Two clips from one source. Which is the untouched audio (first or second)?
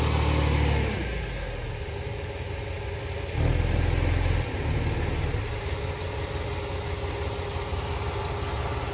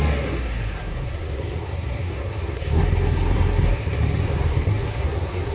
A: first